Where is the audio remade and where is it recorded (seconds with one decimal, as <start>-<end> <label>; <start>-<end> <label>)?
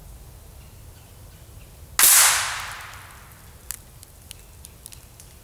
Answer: 0.0-5.4 recorded